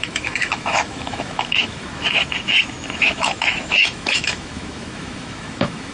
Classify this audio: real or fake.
fake